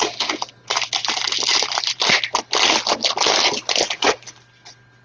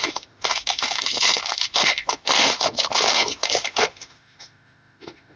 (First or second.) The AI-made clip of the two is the second